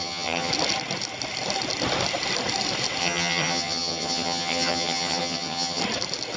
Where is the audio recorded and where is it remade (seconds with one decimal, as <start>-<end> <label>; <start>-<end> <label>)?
0.0-0.5 remade; 0.5-3.0 recorded; 3.0-5.8 remade; 5.8-6.4 recorded